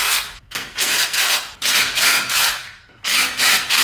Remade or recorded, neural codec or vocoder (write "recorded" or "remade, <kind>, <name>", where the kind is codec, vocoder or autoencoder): remade, codec, SNAC